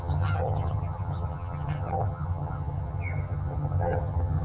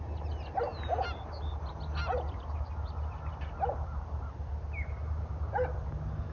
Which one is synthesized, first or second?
first